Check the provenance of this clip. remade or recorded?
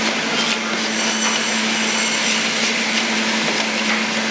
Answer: recorded